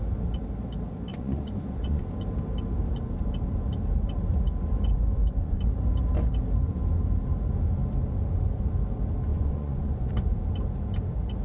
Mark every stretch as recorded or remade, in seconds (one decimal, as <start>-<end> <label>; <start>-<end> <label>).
0.0-1.1 recorded; 1.1-2.0 remade; 2.0-4.9 recorded; 4.9-5.6 remade; 5.6-9.3 recorded; 9.3-10.1 remade; 10.1-11.4 recorded